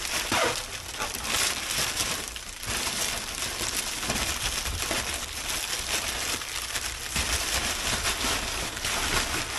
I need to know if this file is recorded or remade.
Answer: remade